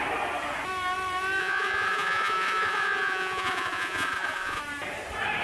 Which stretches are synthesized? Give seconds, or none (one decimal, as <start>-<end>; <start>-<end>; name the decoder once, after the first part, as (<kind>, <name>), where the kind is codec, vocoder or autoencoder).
1.4-4.6 (vocoder, Vocos)